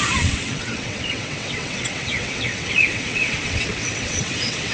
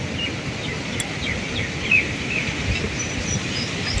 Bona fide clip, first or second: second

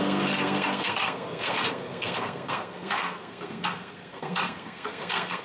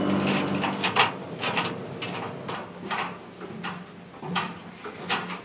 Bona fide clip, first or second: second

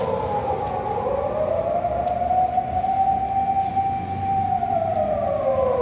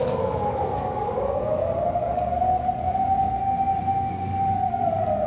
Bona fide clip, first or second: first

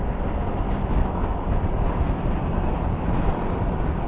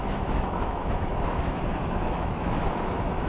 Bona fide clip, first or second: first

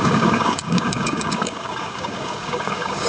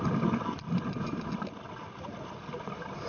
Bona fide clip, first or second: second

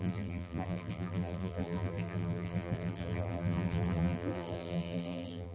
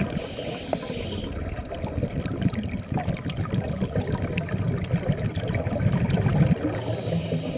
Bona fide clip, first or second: second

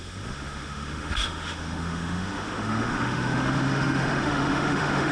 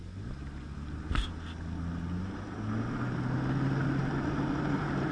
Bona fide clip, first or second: second